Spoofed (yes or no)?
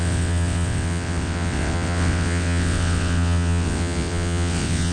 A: yes